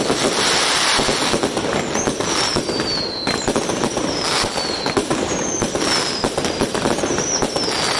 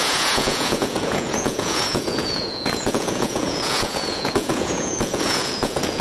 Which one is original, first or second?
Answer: first